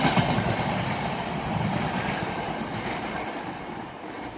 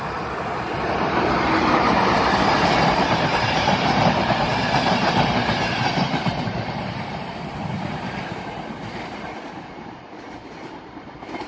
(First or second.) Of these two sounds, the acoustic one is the first